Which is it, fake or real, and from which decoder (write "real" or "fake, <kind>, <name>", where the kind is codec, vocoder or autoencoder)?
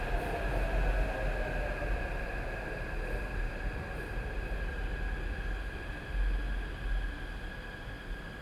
real